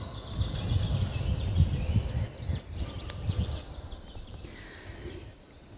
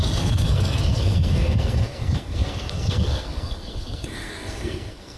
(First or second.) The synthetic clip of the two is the second